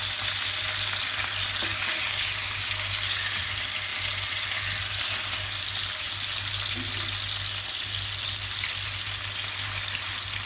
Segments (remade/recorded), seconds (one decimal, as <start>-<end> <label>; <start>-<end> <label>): 0.0-1.7 recorded; 1.7-3.3 remade; 3.3-10.5 recorded